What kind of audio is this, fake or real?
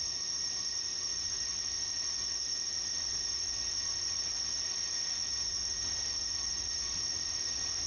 fake